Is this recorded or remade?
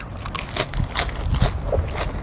recorded